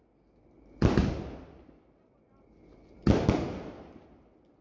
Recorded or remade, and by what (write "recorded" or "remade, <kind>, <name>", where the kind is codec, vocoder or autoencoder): recorded